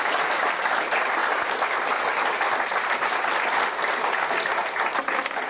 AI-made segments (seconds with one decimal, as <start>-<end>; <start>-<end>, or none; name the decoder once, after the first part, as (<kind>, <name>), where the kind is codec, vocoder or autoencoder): none